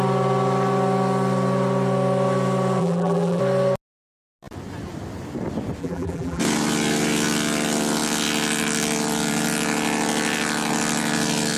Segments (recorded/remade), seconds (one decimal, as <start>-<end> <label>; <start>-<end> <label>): 0.0-2.8 recorded; 2.8-3.4 remade; 3.4-5.8 recorded; 5.8-6.4 remade; 6.4-11.6 recorded